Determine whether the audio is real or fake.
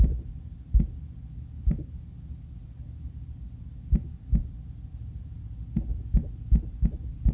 real